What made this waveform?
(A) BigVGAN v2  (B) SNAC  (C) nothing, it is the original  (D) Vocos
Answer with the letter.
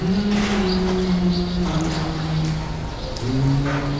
C